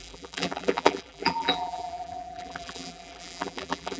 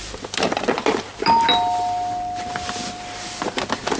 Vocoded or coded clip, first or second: first